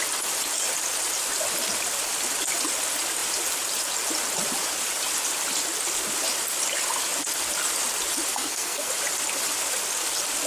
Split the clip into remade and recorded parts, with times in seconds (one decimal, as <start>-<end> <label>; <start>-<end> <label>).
0.0-8.3 recorded; 8.3-8.9 remade; 8.9-10.5 recorded